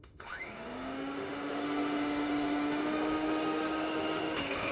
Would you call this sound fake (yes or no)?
yes